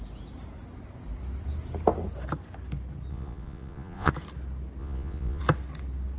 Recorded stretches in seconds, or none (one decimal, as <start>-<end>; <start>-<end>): 0.0-3.1; 4.1-4.8; 5.4-6.2